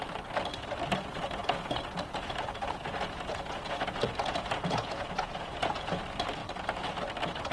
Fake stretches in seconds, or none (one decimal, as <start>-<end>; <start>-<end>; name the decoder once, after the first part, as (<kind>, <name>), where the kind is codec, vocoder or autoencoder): 1.4-5.9 (vocoder, Vocos)